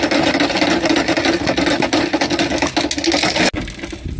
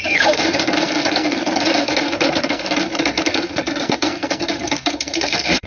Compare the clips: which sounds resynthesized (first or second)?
second